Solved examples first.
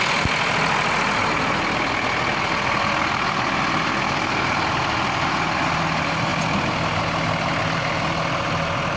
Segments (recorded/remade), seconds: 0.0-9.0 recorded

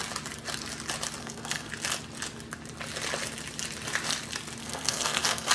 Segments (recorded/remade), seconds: 0.0-1.2 recorded; 1.2-1.7 remade; 1.7-4.6 recorded; 4.6-5.5 remade

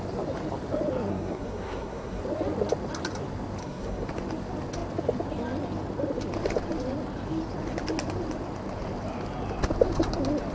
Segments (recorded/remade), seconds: 0.0-1.1 recorded; 1.1-2.2 remade; 2.2-3.6 recorded; 3.6-4.1 remade; 4.1-10.5 recorded